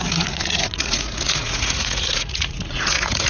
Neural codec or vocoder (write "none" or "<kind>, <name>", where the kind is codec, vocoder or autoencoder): vocoder, Vocos